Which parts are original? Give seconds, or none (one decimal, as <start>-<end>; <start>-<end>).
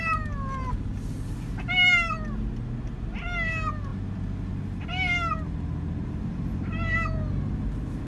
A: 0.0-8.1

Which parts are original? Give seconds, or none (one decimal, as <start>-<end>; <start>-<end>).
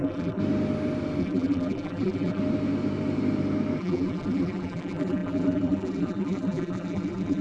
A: 0.4-1.2; 2.4-3.8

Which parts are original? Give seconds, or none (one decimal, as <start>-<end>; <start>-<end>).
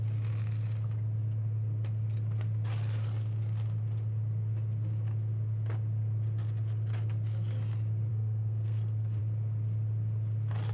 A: 0.0-8.1; 9.2-10.7